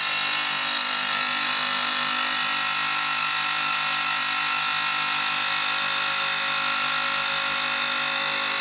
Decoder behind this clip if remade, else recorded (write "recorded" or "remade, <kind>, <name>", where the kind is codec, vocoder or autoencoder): recorded